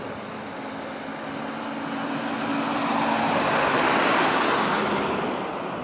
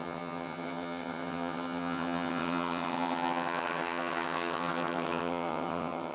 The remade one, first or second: second